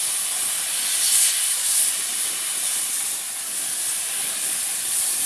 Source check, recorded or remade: recorded